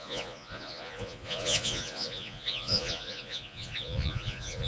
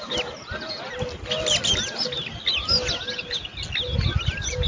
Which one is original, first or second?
second